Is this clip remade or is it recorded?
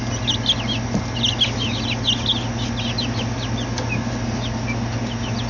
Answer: recorded